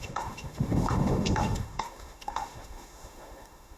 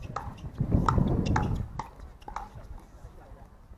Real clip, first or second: second